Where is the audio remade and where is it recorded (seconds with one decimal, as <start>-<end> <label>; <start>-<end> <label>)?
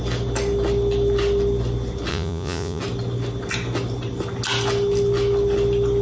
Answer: 0.0-2.1 recorded; 2.1-2.8 remade; 2.8-6.0 recorded